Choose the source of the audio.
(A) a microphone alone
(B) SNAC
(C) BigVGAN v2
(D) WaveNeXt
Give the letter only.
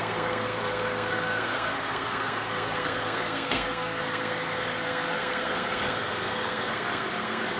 B